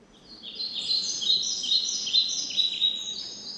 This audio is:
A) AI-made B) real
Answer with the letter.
B